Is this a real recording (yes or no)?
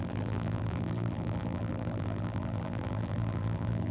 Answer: no